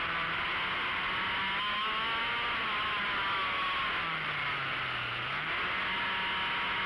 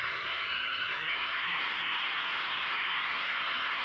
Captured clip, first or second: first